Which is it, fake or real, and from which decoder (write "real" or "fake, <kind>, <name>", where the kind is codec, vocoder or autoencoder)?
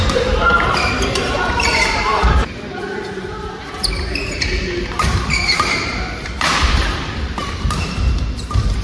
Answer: fake, vocoder, BigVGAN v2